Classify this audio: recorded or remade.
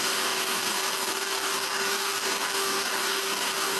remade